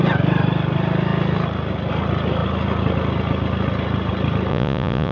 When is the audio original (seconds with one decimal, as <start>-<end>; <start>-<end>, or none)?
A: 0.0-4.5

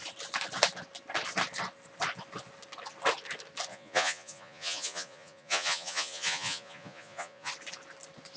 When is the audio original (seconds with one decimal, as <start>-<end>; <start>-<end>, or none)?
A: 0.0-3.7; 7.5-8.4

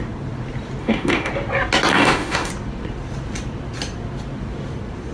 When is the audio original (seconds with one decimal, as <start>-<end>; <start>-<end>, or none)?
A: 0.0-0.8; 1.3-1.9; 2.5-5.1

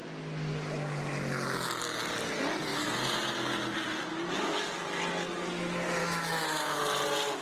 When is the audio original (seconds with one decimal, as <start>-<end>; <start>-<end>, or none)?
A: 0.0-6.0; 6.8-7.4

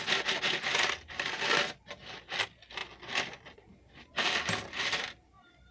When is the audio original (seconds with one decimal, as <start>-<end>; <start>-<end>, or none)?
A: 0.0-5.7